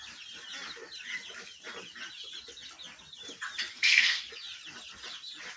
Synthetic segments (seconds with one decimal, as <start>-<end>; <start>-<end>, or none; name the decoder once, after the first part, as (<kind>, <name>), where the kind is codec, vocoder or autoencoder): 3.7-4.2 (codec, SNAC)